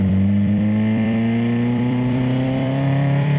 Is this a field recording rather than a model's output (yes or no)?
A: no